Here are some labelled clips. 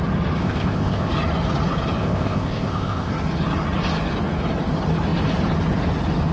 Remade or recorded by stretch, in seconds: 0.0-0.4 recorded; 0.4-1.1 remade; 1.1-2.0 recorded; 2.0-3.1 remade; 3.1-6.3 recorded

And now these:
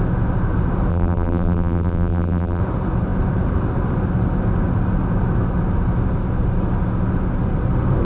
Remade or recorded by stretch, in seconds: 0.0-0.9 recorded; 0.9-2.6 remade; 2.6-8.0 recorded